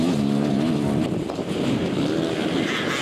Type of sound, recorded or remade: recorded